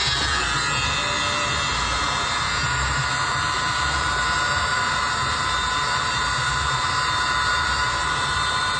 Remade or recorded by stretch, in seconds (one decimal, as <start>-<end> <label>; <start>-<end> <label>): 0.0-1.7 recorded; 1.7-8.8 remade